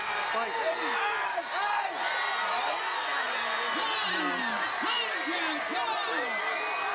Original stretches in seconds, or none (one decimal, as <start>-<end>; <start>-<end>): 0.0-6.9